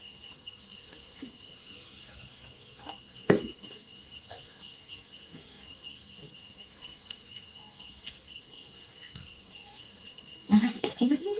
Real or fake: fake